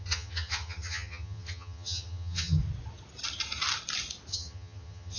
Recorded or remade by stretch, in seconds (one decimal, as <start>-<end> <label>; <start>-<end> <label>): 0.0-2.6 remade; 2.6-4.3 recorded; 4.3-5.2 remade